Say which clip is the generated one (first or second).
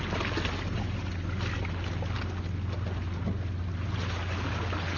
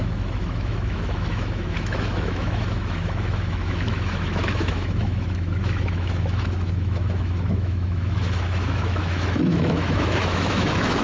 second